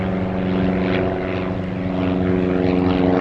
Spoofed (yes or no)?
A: no